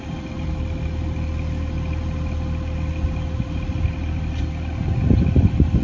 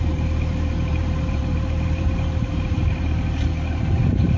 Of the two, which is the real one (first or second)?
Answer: first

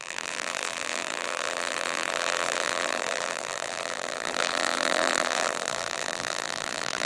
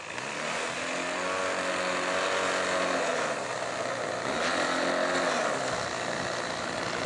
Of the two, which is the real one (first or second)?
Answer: second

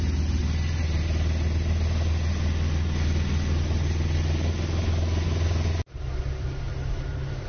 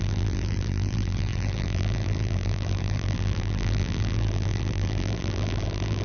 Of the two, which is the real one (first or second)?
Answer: first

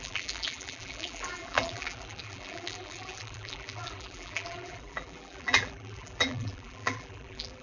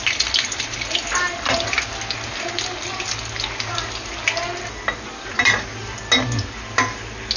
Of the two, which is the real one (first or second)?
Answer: second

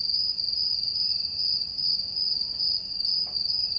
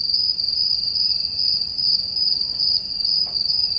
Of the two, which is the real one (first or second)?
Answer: first